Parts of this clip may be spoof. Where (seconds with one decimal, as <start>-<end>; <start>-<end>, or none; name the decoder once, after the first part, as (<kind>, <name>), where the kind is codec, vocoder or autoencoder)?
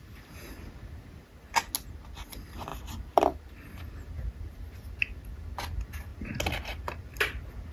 2.7-3.4 (vocoder, BigVGAN v2)